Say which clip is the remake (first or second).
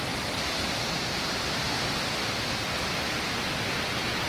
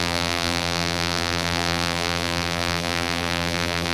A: second